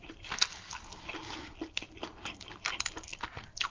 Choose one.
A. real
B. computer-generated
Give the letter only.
A